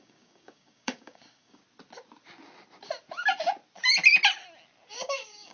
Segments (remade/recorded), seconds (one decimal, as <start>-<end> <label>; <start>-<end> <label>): 0.0-1.6 remade; 1.6-4.9 recorded; 4.9-5.5 remade